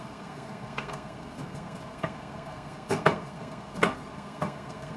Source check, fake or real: fake